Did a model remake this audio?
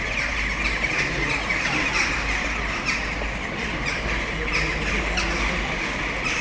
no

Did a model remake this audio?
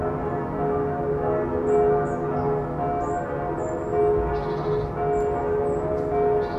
no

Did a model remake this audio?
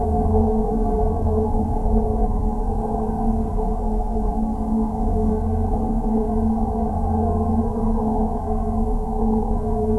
yes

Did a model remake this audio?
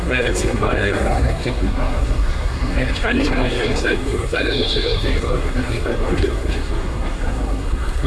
yes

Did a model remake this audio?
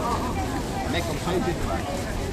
no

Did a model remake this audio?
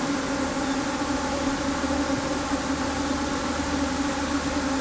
no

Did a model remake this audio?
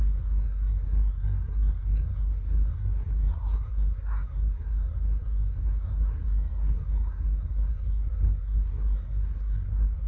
yes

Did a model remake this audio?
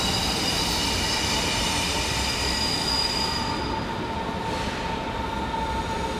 no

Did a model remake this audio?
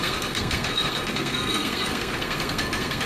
yes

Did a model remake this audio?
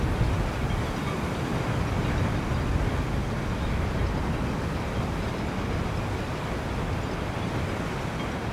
no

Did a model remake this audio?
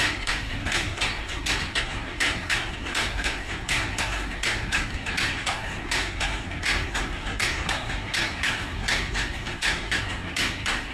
yes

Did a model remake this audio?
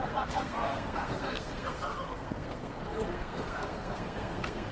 yes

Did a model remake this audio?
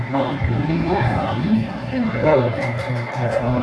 yes